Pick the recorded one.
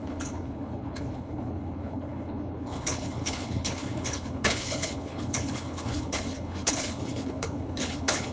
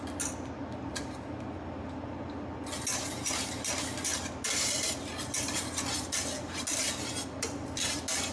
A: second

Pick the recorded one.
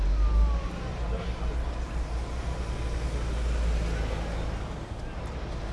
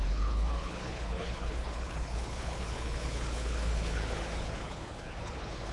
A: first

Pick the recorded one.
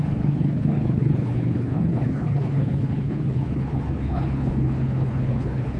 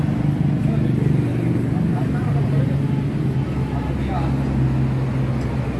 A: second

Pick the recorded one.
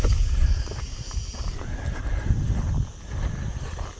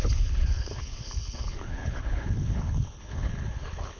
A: first